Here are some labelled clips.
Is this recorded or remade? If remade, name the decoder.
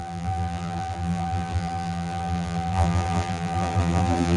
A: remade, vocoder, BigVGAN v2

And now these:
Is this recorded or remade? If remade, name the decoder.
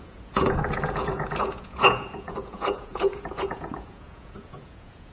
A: remade, vocoder, Vocos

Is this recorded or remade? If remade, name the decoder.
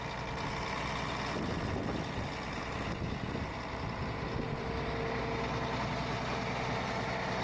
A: recorded